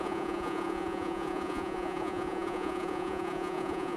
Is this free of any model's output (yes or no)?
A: no